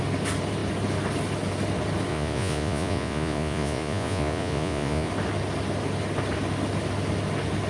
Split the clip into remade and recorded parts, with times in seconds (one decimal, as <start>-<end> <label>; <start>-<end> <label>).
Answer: 0.0-2.1 recorded; 2.1-5.1 remade; 5.1-7.7 recorded